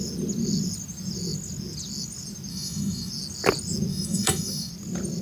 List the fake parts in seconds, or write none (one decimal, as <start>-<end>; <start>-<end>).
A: 2.5-3.1; 3.9-4.7